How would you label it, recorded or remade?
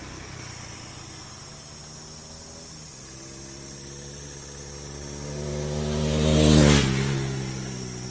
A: recorded